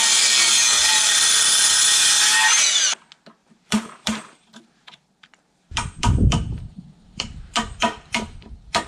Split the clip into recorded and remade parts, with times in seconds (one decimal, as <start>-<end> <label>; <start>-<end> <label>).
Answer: 0.0-0.9 recorded; 0.9-1.5 remade; 1.5-3.4 recorded; 3.4-8.9 remade